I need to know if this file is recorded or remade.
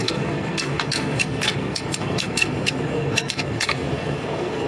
remade